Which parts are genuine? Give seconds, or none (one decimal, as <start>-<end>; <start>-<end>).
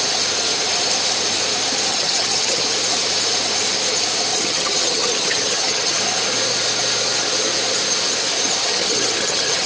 0.0-1.9; 2.6-4.3; 6.0-8.6